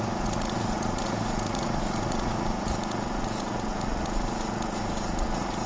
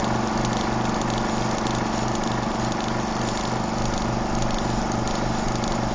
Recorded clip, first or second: second